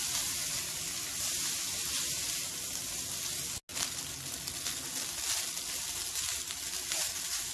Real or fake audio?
real